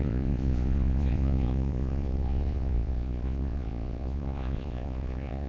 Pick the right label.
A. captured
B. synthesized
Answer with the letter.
B